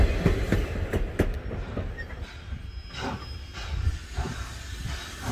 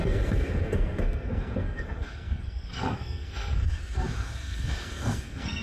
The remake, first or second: second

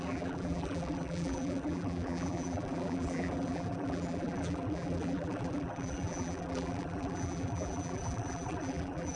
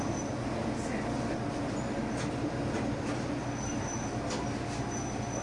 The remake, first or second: first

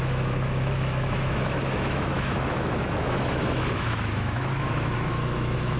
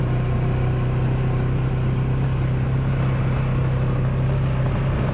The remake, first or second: first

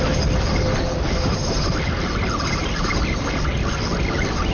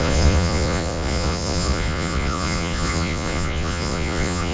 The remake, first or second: second